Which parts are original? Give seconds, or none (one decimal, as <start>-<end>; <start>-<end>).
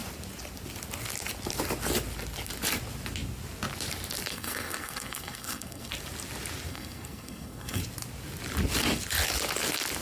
0.0-4.3; 5.9-6.7; 7.8-10.0